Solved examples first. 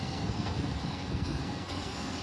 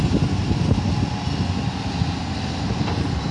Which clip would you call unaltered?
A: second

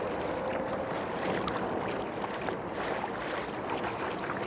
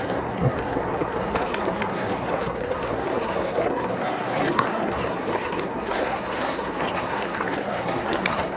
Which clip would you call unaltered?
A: first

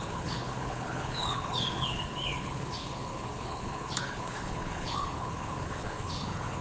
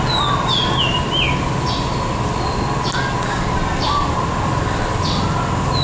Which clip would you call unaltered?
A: second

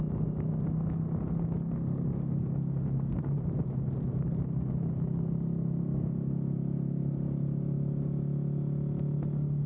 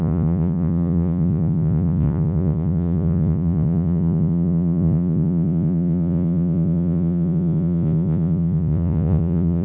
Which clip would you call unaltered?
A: first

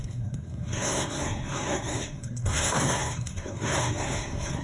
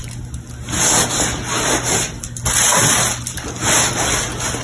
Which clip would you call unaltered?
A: second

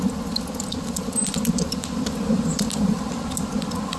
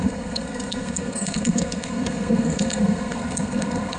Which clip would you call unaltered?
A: first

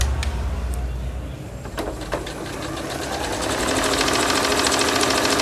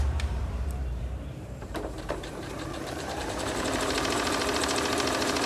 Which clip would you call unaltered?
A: first